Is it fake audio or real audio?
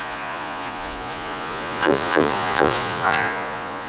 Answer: fake